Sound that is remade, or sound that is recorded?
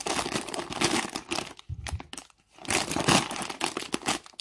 recorded